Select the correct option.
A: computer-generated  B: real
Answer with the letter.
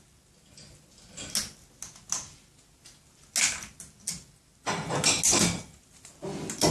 B